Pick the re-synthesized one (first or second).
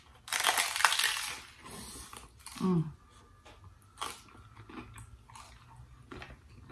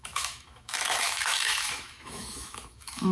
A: second